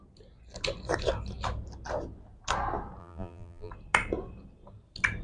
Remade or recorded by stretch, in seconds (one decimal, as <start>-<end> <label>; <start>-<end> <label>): 0.0-3.0 recorded; 3.0-3.7 remade; 3.7-5.2 recorded